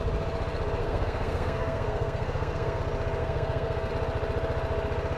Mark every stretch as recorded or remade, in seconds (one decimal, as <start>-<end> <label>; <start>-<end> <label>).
0.0-0.8 recorded; 0.8-2.8 remade; 2.8-3.2 recorded; 3.2-3.9 remade; 3.9-5.2 recorded